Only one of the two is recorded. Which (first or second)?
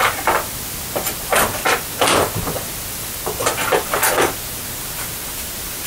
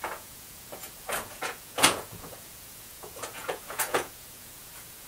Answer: first